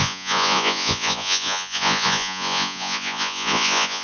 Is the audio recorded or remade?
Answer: remade